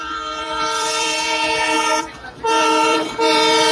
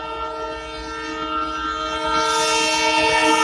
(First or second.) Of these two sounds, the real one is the second